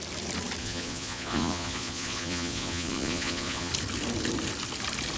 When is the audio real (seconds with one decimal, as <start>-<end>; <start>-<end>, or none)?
0.0-0.6; 3.7-5.2